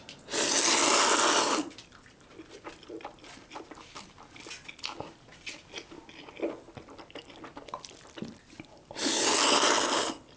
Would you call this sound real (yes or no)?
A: yes